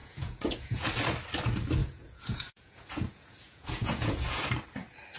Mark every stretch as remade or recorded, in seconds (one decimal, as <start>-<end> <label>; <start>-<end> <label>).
0.0-0.9 remade; 0.9-1.8 recorded; 1.8-4.5 remade; 4.5-5.2 recorded